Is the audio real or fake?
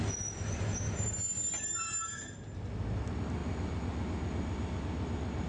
real